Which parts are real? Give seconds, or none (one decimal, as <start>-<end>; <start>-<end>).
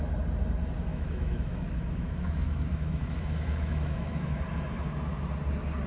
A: 0.0-0.9; 4.4-5.9